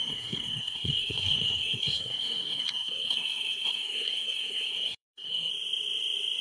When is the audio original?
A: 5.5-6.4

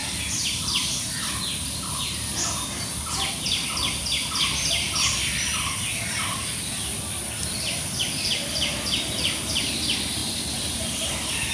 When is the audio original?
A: 0.0-11.5

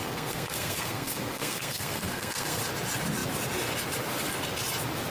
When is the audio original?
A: 2.6-5.1

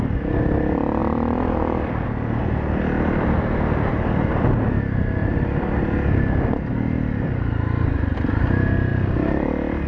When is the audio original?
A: 0.0-9.9

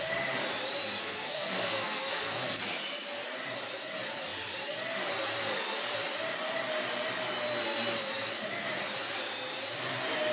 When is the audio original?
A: 0.0-1.0; 2.6-10.3